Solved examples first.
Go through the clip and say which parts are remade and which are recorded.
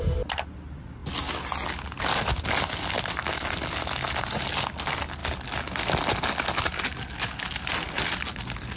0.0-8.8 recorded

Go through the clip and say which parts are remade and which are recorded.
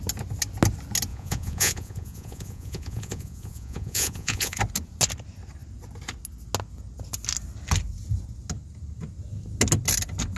0.0-1.1 recorded; 1.1-4.6 remade; 4.6-10.4 recorded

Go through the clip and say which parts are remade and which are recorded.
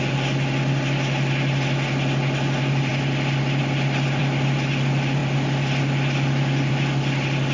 0.0-7.5 recorded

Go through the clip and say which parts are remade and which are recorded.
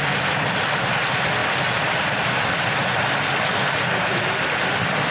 0.0-5.1 recorded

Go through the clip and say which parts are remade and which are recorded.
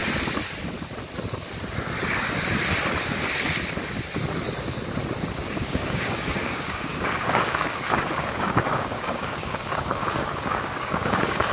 0.0-5.3 recorded; 5.3-11.5 remade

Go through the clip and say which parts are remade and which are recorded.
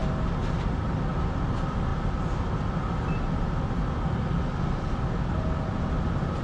0.0-6.4 recorded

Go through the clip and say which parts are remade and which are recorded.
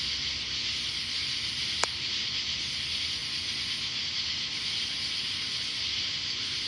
0.0-6.7 recorded